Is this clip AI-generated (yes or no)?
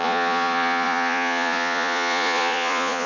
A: yes